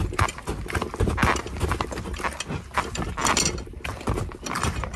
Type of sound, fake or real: real